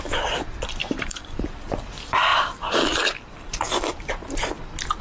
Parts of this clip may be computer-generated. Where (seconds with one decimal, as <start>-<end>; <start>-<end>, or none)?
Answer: 0.8-1.7; 2.3-3.5